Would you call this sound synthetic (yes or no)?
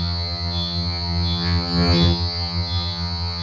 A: yes